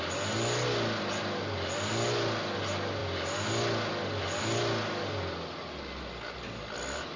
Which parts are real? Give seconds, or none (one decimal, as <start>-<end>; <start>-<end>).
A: 0.0-7.2